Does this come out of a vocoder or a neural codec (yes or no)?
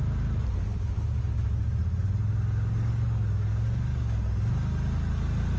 no